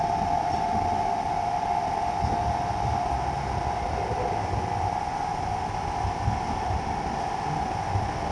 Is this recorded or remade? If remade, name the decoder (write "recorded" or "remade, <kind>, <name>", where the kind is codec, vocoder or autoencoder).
recorded